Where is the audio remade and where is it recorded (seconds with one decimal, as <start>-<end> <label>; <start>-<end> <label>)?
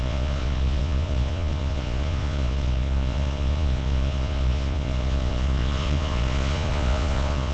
0.0-7.5 remade